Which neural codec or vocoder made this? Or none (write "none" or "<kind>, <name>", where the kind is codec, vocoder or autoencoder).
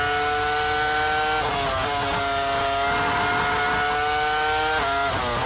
none